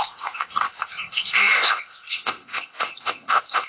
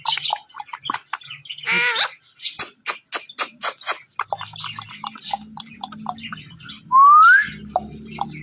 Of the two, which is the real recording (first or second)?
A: second